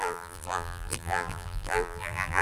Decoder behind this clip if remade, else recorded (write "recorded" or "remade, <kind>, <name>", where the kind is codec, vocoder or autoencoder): remade, vocoder, BigVGAN v2